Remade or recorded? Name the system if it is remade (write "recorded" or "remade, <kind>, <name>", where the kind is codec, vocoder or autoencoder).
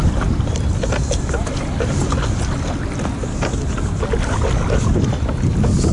recorded